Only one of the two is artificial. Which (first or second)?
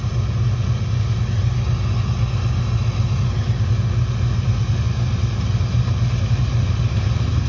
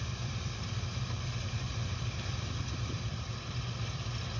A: second